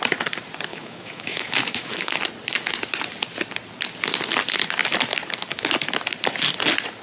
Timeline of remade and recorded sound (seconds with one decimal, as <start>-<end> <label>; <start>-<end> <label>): 0.0-0.7 recorded; 0.7-2.1 remade; 2.1-7.0 recorded